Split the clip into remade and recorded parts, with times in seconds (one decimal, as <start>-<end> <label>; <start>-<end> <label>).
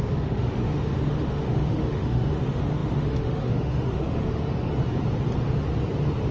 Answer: 0.0-4.7 remade; 4.7-6.3 recorded